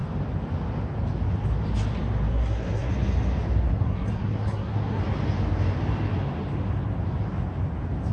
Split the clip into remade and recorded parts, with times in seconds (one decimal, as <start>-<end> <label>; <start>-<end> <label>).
0.0-2.3 recorded; 2.3-2.9 remade; 2.9-3.7 recorded; 3.7-5.0 remade; 5.0-8.1 recorded